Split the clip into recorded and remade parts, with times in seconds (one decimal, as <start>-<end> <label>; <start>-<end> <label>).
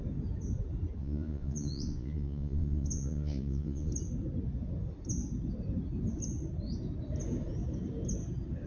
0.0-1.0 recorded; 1.0-3.9 remade; 3.9-8.7 recorded